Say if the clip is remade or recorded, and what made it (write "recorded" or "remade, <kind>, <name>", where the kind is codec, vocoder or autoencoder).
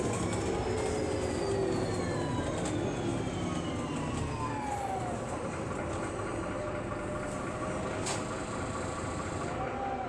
recorded